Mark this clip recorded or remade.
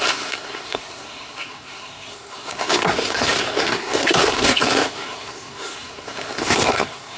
remade